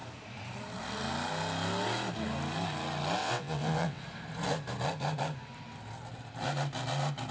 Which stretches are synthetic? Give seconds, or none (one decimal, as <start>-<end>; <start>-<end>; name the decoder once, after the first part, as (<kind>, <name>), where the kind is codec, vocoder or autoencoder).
3.2-4.0 (vocoder, WaveNeXt)